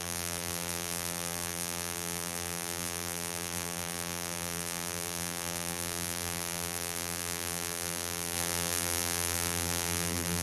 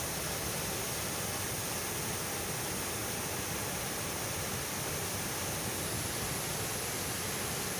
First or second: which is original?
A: second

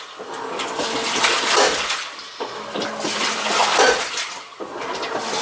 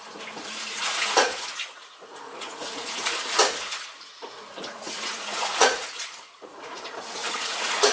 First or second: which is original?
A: first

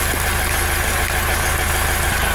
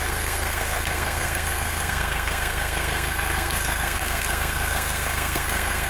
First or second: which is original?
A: first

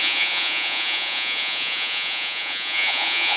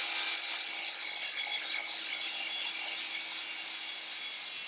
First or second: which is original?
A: second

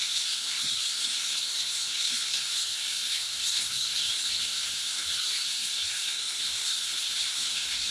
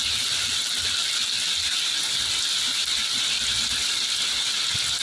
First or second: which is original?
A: second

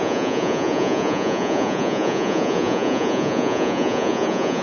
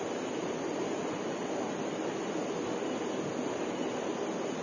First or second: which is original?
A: second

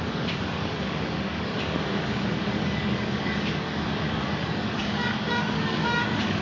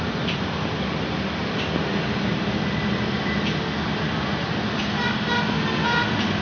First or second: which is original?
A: second